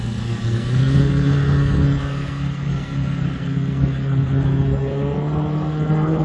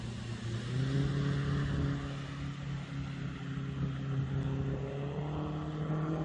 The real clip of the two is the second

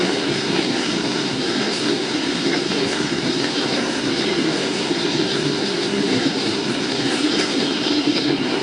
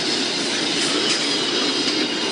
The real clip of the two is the second